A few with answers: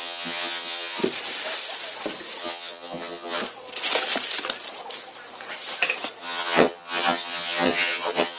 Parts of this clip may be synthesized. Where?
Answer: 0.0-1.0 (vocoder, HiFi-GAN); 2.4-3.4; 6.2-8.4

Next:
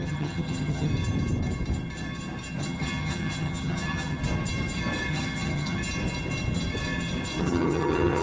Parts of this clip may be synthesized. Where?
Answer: 0.0-0.9 (vocoder, HiFi-GAN); 2.6-4.2; 5.1-5.8; 7.4-8.2